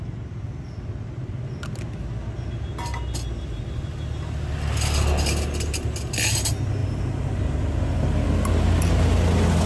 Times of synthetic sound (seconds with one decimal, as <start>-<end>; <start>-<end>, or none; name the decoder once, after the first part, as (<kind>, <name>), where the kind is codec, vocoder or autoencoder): none